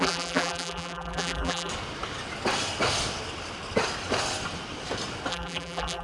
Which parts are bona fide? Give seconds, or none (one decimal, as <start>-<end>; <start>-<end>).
1.7-5.3